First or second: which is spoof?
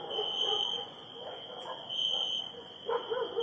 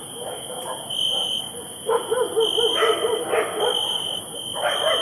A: first